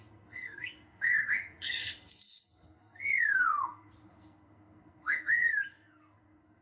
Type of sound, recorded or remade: remade